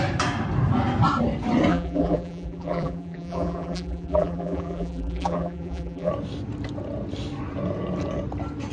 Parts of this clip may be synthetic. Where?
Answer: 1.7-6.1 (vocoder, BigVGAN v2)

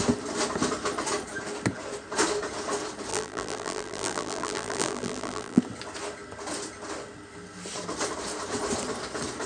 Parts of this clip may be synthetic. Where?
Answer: 3.1-5.6 (vocoder, BigVGAN v2)

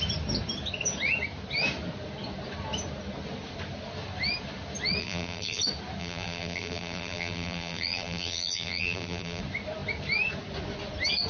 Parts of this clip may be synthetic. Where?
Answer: 5.0-5.6 (vocoder, BigVGAN v2); 6.0-9.4

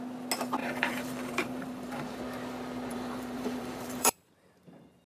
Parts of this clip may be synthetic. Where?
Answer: 0.6-2.2 (vocoder, BigVGAN v2); 2.9-4.3

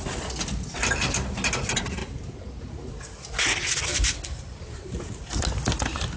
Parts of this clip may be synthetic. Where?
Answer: 2.0-2.9 (vocoder, BigVGAN v2); 3.9-5.4